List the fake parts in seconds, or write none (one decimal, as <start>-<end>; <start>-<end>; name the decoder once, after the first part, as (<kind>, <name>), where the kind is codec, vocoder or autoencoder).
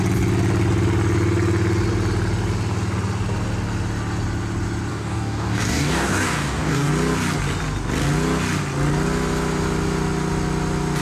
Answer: 4.9-6.9 (codec, DAC)